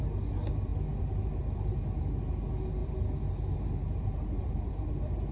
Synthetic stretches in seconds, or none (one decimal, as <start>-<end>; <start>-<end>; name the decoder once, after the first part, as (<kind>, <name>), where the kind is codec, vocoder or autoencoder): 3.8-5.3 (vocoder, BigVGAN v2)